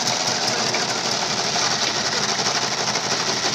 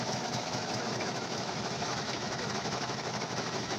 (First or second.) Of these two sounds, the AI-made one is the second